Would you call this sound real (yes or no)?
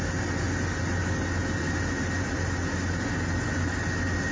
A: yes